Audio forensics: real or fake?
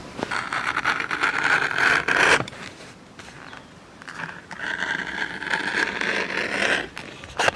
fake